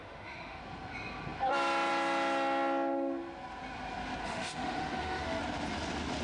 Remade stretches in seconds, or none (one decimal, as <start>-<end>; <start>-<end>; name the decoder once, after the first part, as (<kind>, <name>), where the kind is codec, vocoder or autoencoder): 0.0-0.6 (autoencoder, DAC-VAE); 4.2-5.4